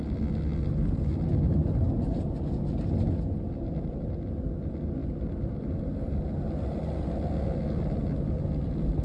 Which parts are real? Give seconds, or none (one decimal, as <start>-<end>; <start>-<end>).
0.0-9.0